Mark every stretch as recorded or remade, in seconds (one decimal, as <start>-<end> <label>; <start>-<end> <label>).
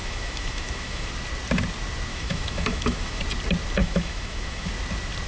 0.0-1.1 remade; 1.1-2.1 recorded; 2.1-3.2 remade; 3.2-3.8 recorded; 3.8-4.7 remade; 4.7-5.3 recorded